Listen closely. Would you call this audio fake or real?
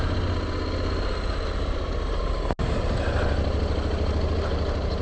real